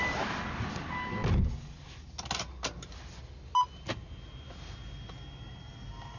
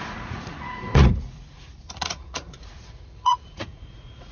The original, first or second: first